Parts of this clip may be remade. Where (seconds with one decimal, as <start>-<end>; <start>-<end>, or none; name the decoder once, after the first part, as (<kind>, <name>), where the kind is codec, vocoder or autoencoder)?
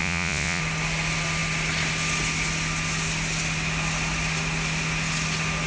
0.0-0.6 (vocoder, Vocos)